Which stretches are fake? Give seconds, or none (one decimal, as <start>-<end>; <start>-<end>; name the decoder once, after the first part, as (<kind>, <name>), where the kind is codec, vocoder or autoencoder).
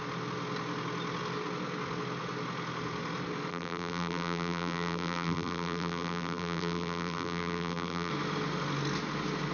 3.5-8.1 (vocoder, BigVGAN v2)